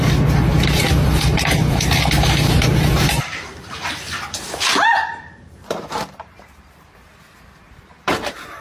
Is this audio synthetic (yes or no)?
yes